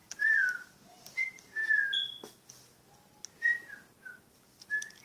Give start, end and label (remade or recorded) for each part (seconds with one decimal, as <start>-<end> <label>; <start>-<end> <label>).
0.0-5.0 recorded